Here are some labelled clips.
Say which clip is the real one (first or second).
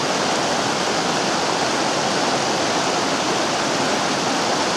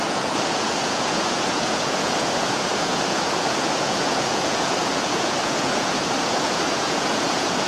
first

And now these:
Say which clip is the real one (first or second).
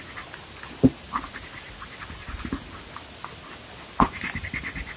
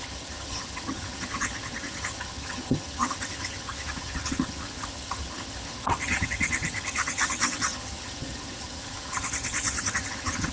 first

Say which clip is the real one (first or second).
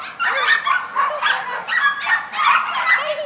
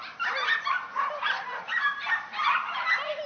first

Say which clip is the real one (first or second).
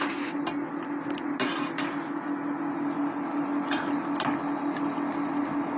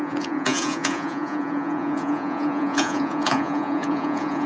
first